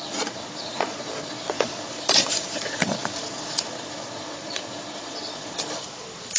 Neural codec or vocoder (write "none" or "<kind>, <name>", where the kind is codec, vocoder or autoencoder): vocoder, Vocos